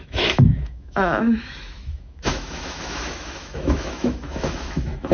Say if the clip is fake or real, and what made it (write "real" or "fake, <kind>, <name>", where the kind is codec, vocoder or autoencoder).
fake, autoencoder, DAC-VAE